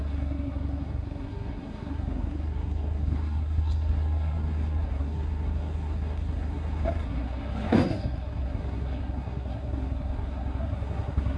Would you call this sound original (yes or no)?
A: no